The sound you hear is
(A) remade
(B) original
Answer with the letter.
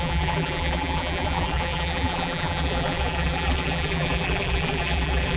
A